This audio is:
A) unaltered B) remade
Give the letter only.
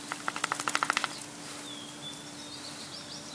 A